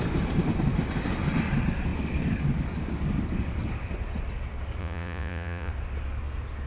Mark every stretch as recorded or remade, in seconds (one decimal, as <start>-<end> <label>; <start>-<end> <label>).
0.0-4.8 recorded; 4.8-5.7 remade; 5.7-6.7 recorded